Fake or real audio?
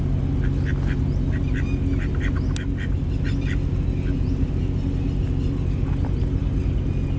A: real